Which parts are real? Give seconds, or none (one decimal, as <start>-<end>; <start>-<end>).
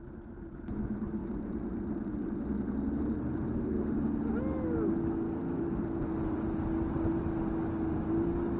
0.0-8.6